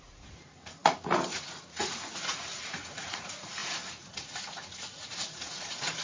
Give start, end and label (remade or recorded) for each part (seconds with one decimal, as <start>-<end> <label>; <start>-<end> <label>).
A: 0.0-6.0 remade